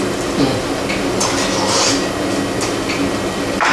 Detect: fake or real real